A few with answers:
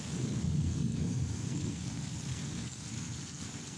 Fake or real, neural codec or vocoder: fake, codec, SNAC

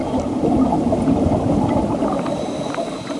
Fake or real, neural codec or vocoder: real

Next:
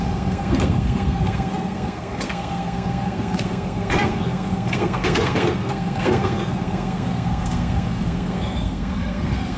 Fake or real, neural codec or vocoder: fake, codec, SNAC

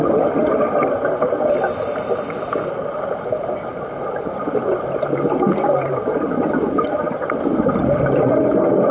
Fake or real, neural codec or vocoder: real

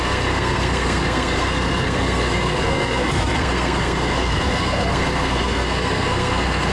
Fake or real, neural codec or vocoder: fake, codec, SNAC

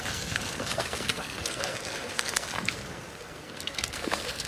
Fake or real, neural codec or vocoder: fake, codec, SNAC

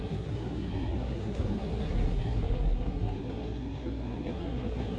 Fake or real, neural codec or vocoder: fake, codec, SNAC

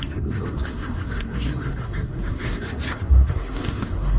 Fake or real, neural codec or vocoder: fake, codec, SNAC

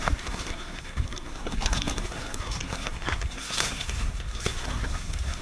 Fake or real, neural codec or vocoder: fake, codec, SNAC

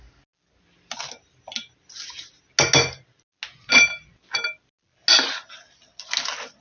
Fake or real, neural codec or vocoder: real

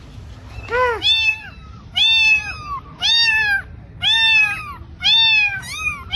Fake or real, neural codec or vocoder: real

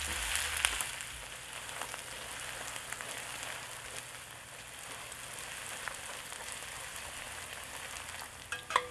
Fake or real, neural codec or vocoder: real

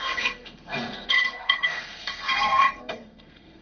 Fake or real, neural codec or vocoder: fake, codec, SNAC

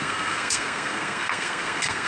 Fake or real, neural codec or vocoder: fake, codec, SNAC